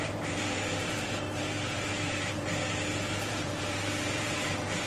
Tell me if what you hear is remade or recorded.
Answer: remade